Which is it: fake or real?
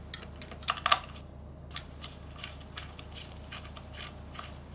real